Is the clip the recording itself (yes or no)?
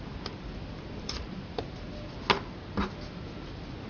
yes